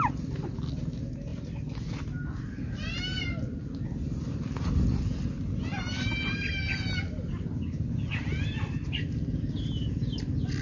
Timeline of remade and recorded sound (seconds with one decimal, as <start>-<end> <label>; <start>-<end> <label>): 0.0-10.6 recorded